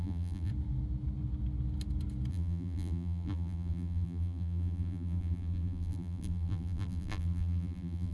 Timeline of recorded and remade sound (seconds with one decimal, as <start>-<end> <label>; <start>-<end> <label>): 0.0-0.5 remade; 0.5-2.3 recorded; 2.3-8.1 remade